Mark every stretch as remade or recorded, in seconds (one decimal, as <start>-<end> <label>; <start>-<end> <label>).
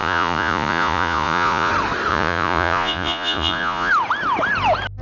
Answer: 0.0-1.7 remade; 1.7-2.1 recorded; 2.1-3.9 remade; 3.9-5.0 recorded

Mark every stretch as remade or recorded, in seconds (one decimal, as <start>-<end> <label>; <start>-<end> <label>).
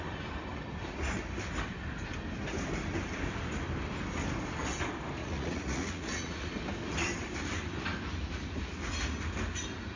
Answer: 0.0-5.2 recorded; 5.2-6.5 remade; 6.5-10.0 recorded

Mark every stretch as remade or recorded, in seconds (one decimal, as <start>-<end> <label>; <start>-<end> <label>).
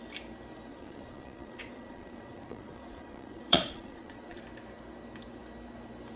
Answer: 0.0-0.7 recorded; 0.7-4.4 remade; 4.4-6.2 recorded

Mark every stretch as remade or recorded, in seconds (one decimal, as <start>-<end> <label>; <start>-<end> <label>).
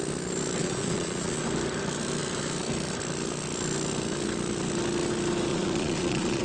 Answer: 0.0-0.6 recorded; 0.6-1.4 remade; 1.4-5.5 recorded; 5.5-6.4 remade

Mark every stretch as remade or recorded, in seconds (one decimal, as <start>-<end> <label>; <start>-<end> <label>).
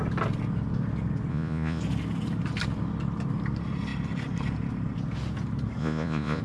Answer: 0.0-1.3 recorded; 1.3-1.8 remade; 1.8-5.8 recorded; 5.8-6.4 remade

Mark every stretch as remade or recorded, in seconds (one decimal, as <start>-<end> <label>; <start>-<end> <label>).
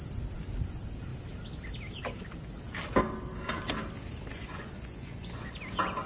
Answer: 0.0-4.3 recorded; 4.3-5.5 remade; 5.5-6.1 recorded